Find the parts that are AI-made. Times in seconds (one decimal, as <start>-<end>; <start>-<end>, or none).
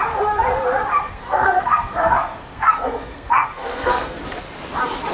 1.1-4.2